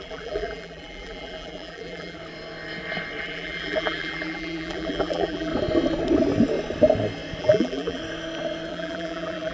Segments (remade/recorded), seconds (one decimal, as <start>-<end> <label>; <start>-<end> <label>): 0.0-2.2 remade; 2.2-3.2 recorded; 3.2-5.5 remade; 5.5-7.4 recorded; 7.4-8.0 remade; 8.0-8.7 recorded; 8.7-9.5 remade